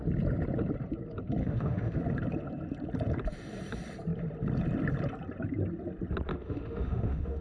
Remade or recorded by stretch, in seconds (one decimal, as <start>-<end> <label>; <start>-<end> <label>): 0.0-1.4 recorded; 1.4-2.0 remade; 2.0-6.3 recorded; 6.3-7.4 remade